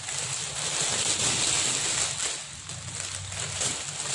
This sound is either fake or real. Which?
real